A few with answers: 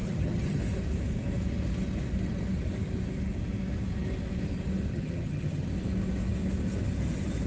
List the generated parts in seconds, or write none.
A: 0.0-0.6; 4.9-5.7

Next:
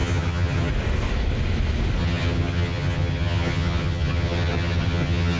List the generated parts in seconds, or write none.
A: 0.0-0.7; 2.0-5.4

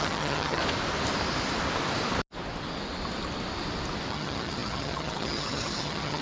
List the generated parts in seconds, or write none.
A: 0.0-0.6; 4.1-6.2

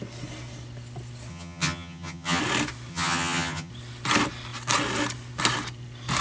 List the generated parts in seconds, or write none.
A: 1.3-2.4; 2.9-3.7

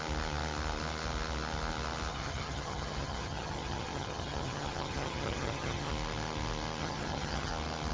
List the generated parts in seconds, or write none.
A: 2.1-5.9; 6.8-7.5

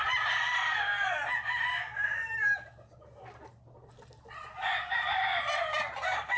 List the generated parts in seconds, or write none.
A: none

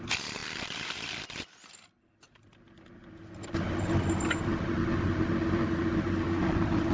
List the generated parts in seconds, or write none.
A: none

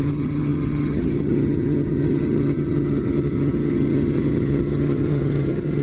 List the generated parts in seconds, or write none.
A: 0.0-5.8